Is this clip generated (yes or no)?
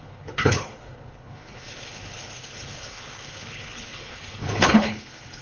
yes